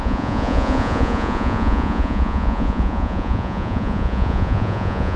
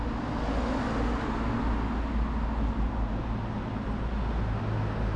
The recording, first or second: second